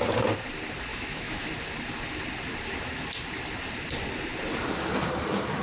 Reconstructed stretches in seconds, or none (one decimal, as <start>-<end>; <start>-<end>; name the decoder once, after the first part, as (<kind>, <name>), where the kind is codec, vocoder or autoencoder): 0.9-1.5 (autoencoder, DAC-VAE)